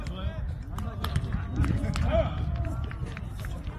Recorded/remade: recorded